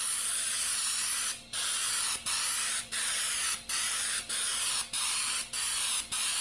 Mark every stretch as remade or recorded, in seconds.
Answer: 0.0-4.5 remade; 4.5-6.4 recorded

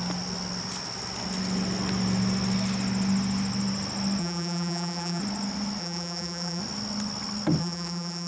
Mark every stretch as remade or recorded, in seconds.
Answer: 0.0-4.2 recorded; 4.2-5.2 remade; 5.2-5.8 recorded; 5.8-6.6 remade; 6.6-7.6 recorded; 7.6-8.3 remade

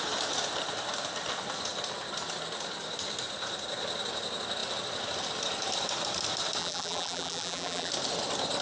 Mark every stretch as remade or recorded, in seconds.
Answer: 0.0-6.6 recorded; 6.6-7.9 remade; 7.9-8.6 recorded

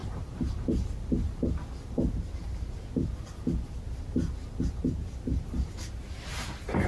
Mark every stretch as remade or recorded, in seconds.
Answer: 0.0-1.4 remade; 1.4-2.4 recorded; 2.4-3.3 remade; 3.3-4.4 recorded; 4.4-6.0 remade; 6.0-6.9 recorded

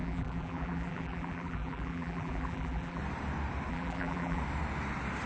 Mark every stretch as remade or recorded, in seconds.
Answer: 0.0-3.0 remade; 3.0-3.7 recorded; 3.7-4.4 remade; 4.4-5.3 recorded

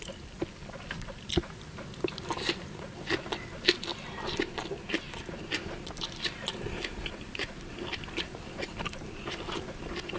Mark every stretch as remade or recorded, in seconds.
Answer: 0.0-3.9 remade; 3.9-5.0 recorded; 5.0-10.2 remade

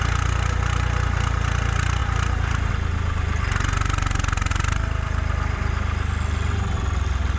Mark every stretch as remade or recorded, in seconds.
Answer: 0.0-2.0 recorded; 2.0-2.7 remade; 2.7-4.5 recorded; 4.5-5.7 remade; 5.7-7.4 recorded